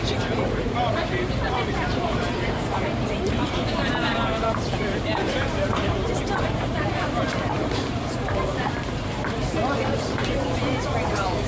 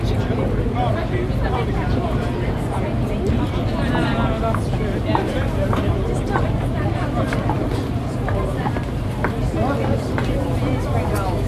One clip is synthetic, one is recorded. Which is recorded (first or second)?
second